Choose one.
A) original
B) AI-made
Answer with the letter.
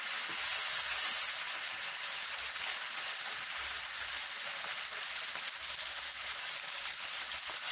A